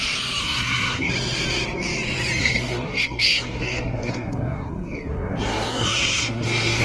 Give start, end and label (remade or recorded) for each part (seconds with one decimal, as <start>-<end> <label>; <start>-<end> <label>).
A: 0.0-0.4 recorded; 0.4-1.1 remade; 1.1-2.4 recorded; 2.4-6.8 remade